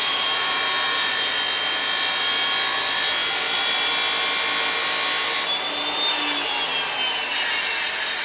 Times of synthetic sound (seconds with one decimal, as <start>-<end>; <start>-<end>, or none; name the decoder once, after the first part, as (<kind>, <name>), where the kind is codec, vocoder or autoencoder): 0.0-1.1 (vocoder, BigVGAN v2)